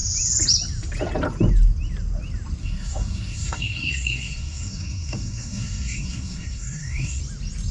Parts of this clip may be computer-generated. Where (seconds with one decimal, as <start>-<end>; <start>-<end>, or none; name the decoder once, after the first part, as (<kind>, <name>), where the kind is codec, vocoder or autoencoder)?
2.6-7.2 (codec, SNAC)